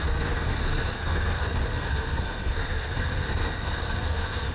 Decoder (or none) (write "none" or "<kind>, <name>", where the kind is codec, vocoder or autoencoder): codec, SNAC